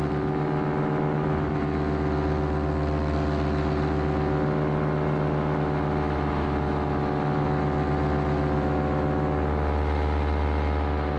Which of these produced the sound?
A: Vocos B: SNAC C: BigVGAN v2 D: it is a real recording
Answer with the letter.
D